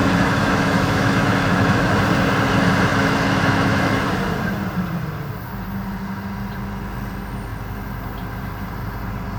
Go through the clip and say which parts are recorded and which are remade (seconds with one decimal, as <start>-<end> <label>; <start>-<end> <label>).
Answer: 0.0-1.9 remade; 1.9-2.9 recorded; 2.9-3.9 remade; 3.9-9.4 recorded